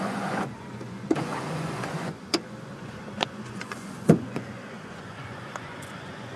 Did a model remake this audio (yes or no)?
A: yes